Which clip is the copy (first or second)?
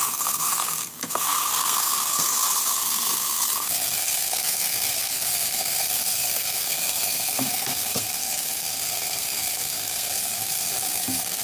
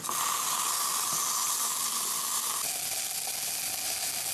first